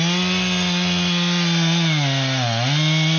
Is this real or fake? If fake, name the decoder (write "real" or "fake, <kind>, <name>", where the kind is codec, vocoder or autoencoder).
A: real